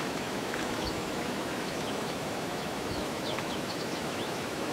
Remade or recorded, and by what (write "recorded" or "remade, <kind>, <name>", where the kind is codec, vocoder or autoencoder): remade, autoencoder, DAC-VAE